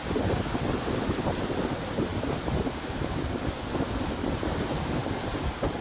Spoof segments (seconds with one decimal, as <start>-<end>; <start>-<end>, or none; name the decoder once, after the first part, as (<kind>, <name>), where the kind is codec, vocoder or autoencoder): none